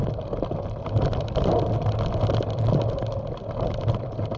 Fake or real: real